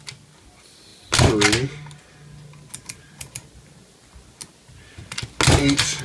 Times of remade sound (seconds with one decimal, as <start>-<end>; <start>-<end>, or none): none